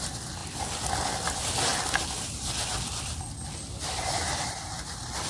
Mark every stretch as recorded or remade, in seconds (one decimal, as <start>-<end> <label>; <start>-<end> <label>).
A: 0.0-5.3 recorded